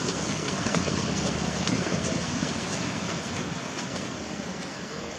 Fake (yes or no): yes